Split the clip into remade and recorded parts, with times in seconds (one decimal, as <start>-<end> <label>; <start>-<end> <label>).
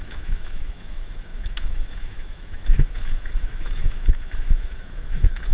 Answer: 0.0-5.5 remade